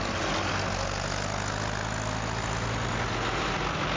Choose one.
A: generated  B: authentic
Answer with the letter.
B